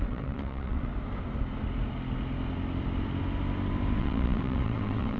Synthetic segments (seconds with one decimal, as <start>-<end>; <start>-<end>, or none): 0.0-0.9; 4.0-5.2